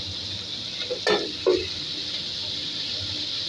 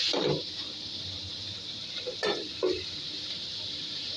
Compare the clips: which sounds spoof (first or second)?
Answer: second